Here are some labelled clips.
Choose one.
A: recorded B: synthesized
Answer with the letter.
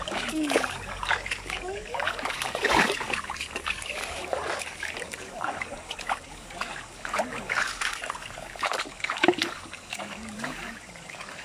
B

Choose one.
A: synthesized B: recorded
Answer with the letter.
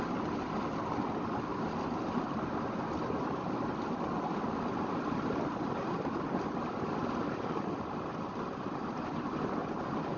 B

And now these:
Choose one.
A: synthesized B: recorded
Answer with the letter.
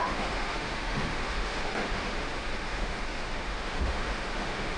A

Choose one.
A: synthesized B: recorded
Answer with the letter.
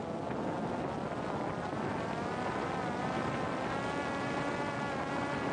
B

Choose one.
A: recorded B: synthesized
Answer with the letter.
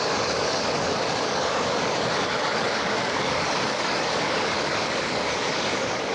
B